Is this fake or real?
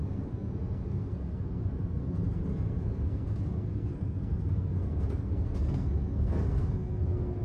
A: fake